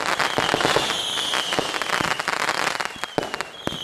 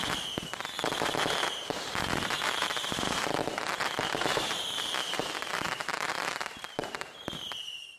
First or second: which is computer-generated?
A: second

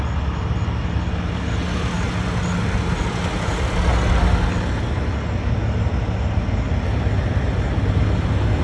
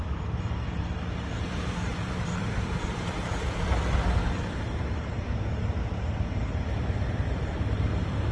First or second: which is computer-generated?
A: second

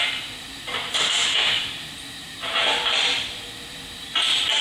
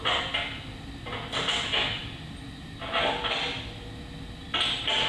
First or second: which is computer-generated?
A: first